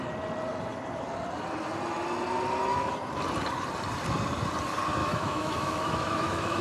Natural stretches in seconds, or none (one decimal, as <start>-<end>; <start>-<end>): 0.0-5.0